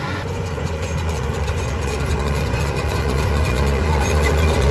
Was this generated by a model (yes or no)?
yes